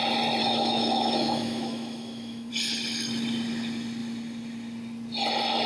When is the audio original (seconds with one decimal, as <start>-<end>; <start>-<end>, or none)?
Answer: 0.0-0.4; 2.5-5.7